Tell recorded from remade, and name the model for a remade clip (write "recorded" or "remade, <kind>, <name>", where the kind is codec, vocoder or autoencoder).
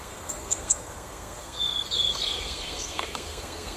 remade, codec, SNAC